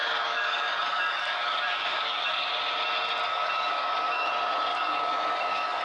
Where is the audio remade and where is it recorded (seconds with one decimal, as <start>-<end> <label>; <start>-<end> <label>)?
0.0-2.5 remade; 2.5-3.3 recorded; 3.3-4.3 remade; 4.3-4.7 recorded; 4.7-5.8 remade